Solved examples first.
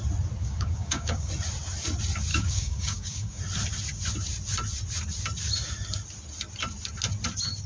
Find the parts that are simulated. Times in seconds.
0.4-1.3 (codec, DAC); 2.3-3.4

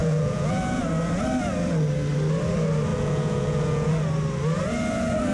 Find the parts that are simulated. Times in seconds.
0.0-0.8 (vocoder, Vocos); 2.9-3.9

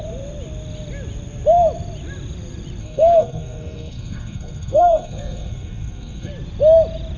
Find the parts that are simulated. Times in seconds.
2.8-6.3 (codec, SNAC)

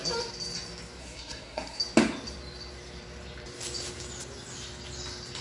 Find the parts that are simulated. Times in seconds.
1.0-1.8 (codec, SNAC)

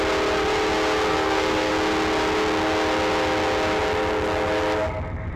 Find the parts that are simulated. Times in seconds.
1.1-1.7 (codec, SNAC)

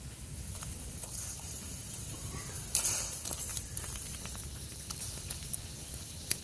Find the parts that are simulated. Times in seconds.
3.5-6.4 (vocoder, BigVGAN v2)

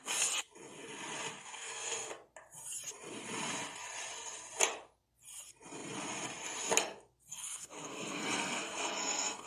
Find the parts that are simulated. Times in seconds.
1.4-2.1 (codec, SNAC); 7.3-9.5

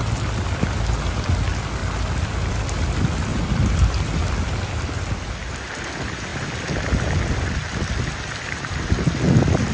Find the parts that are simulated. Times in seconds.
0.0-0.6 (vocoder, BigVGAN v2); 1.8-2.5; 3.3-5.5